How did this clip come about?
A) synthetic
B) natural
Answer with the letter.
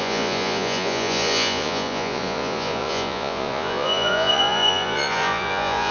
A